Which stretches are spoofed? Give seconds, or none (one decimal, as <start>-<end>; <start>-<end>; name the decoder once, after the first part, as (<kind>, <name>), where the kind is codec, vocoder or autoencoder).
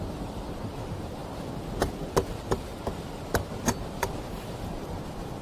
0.0-1.2 (vocoder, BigVGAN v2); 2.3-2.7; 3.7-5.4